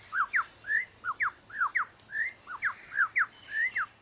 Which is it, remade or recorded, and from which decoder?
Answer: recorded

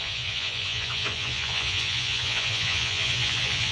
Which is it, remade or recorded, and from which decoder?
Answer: remade, vocoder, Vocos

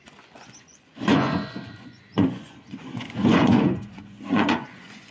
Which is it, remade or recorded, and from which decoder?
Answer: remade, vocoder, Vocos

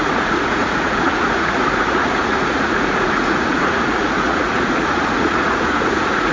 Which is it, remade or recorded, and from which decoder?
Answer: remade, vocoder, Vocos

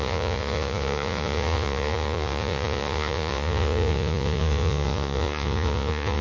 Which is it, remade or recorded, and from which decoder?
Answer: remade, vocoder, Vocos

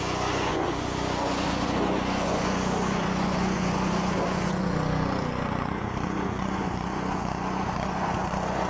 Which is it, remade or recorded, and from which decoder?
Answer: remade, vocoder, Vocos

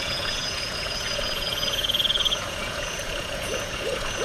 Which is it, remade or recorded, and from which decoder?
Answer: remade, vocoder, Vocos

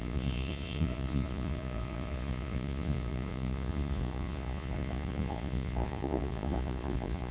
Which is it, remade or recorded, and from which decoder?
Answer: remade, vocoder, Vocos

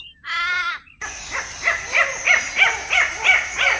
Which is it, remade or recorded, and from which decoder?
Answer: recorded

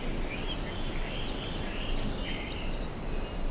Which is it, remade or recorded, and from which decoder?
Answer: recorded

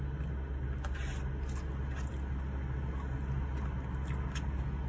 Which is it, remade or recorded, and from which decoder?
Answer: recorded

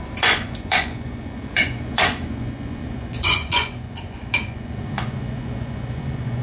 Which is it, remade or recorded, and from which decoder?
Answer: remade, vocoder, Vocos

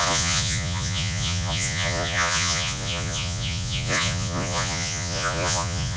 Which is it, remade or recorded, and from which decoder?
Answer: remade, vocoder, Vocos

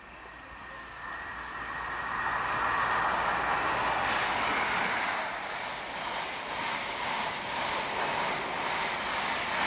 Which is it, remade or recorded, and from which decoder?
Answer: recorded